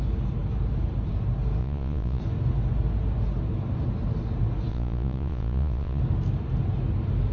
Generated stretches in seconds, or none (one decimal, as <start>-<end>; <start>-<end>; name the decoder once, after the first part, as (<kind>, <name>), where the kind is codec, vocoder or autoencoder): 1.6-2.2 (vocoder, Vocos); 4.7-6.0